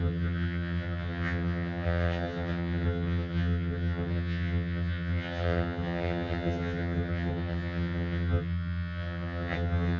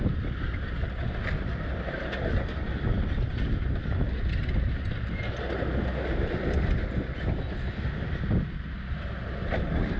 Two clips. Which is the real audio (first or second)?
second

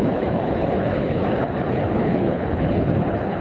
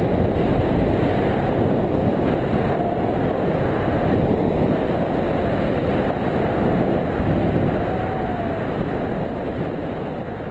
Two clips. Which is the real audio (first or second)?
second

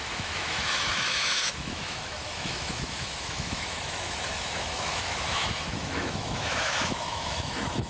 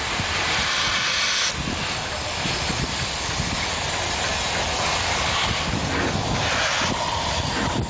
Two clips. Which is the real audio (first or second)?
second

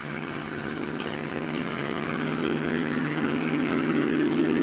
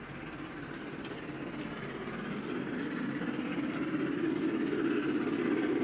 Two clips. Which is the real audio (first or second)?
second